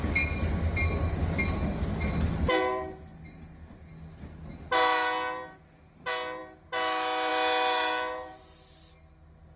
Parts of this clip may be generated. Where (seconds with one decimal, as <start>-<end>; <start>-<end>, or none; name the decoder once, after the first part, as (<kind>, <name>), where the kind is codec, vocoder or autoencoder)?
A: none